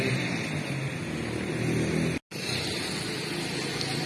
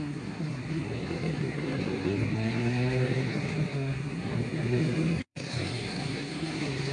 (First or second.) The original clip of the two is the first